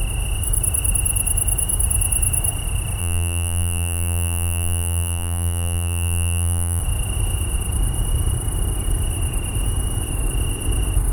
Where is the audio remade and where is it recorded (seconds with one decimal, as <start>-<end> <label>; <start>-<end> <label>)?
0.0-3.0 recorded; 3.0-6.8 remade; 6.8-11.1 recorded